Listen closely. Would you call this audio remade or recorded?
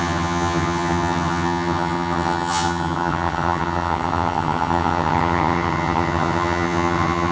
remade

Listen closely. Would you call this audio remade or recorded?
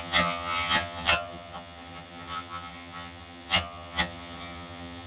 remade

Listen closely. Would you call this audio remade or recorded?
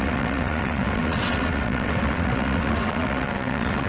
remade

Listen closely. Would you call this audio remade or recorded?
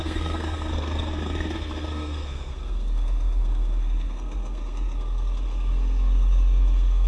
remade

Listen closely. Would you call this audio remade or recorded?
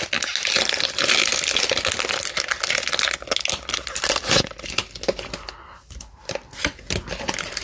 recorded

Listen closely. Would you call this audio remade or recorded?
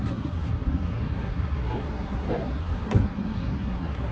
remade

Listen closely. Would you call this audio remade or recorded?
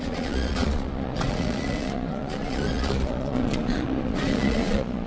remade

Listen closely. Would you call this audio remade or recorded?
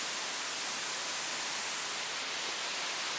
recorded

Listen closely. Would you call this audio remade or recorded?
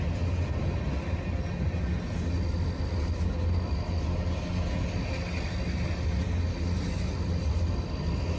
recorded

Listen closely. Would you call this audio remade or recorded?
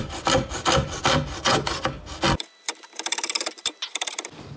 remade